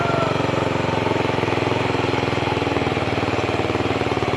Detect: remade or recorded recorded